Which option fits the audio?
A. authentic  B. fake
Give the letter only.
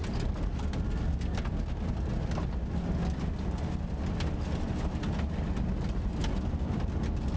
A